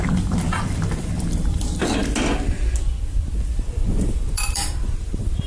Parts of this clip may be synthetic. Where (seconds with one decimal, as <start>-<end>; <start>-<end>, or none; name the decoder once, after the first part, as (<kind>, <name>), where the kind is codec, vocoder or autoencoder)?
0.0-2.0 (vocoder, BigVGAN v2); 3.4-5.5